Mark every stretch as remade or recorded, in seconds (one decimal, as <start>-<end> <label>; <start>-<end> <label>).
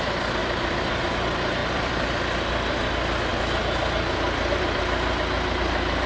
0.0-0.4 recorded; 0.4-1.0 remade; 1.0-1.6 recorded; 1.6-2.1 remade; 2.1-6.1 recorded